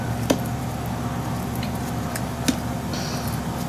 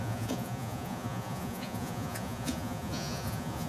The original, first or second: first